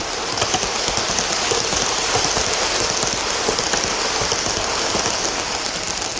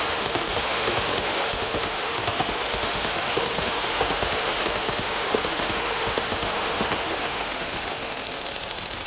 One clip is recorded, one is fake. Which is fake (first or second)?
second